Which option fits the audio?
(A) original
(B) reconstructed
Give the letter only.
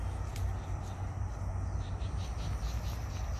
A